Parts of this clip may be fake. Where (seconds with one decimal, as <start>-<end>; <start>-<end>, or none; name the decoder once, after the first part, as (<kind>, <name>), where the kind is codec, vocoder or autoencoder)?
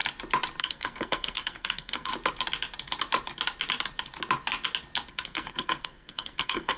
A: 0.6-2.1 (codec, SNAC); 5.1-6.8